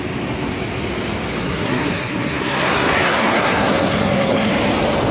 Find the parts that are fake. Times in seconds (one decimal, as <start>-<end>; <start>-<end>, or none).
1.4-4.5